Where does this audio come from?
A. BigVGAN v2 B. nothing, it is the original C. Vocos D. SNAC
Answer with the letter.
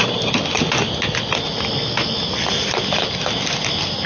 B